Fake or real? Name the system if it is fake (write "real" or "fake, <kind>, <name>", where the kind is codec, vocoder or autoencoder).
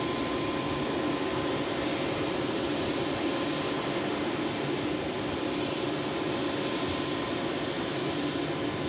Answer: real